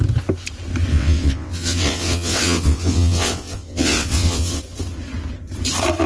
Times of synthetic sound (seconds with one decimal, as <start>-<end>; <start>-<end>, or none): 0.9-4.6